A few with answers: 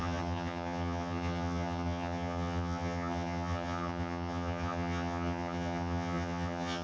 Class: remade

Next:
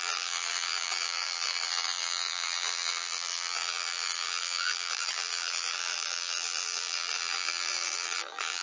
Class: remade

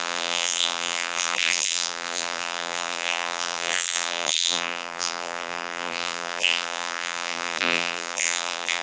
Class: remade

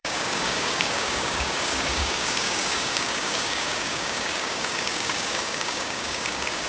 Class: remade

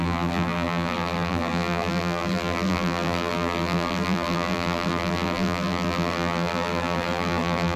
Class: remade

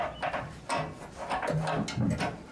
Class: recorded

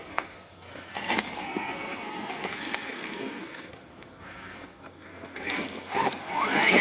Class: remade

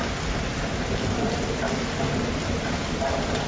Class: recorded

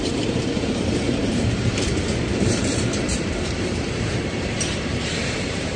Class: remade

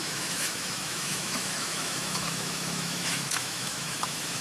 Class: remade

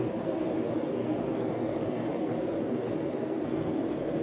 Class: remade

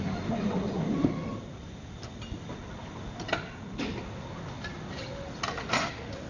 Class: recorded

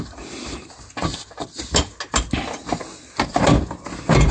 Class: recorded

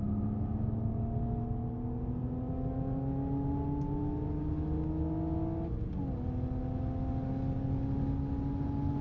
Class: recorded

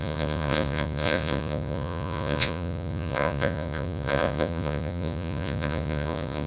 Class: remade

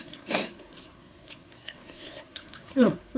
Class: remade